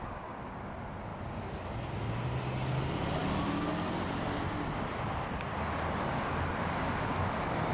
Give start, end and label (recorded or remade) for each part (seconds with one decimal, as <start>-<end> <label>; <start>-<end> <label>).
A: 0.0-7.7 recorded